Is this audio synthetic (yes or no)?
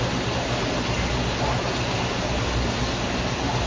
no